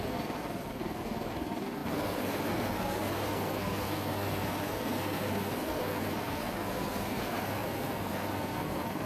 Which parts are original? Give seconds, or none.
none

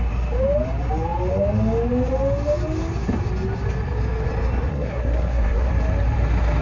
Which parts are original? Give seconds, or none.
0.0-4.7; 5.7-6.6